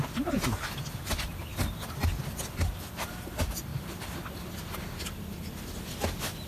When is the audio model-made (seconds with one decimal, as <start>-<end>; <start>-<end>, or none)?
none